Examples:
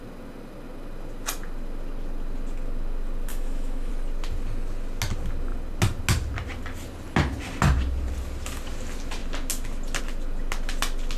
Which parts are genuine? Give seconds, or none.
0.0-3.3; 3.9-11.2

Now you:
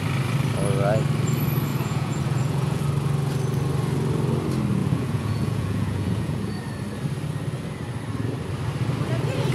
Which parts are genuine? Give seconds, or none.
0.0-1.7; 2.8-4.8; 6.5-9.5